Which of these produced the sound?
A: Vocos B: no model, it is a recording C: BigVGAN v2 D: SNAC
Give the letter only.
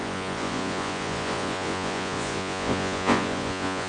A